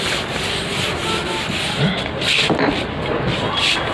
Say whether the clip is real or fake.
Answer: real